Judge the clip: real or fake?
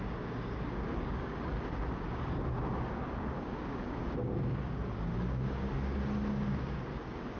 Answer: fake